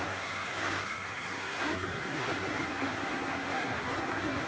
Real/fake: fake